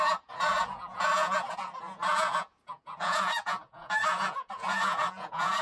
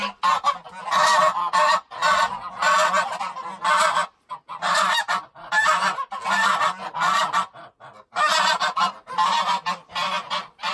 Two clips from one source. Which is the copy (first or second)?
first